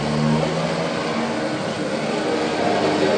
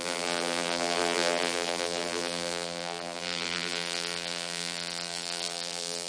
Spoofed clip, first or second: second